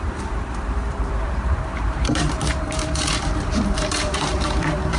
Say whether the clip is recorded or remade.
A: remade